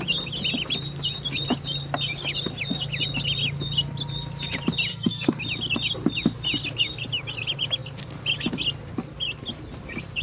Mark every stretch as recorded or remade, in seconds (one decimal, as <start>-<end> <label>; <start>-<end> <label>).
0.0-4.9 recorded; 4.9-5.4 remade; 5.4-10.2 recorded